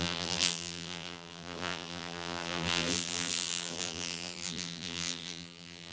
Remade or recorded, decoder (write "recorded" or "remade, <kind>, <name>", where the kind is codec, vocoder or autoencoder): remade, vocoder, BigVGAN v2